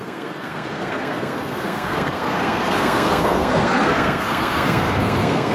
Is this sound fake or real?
fake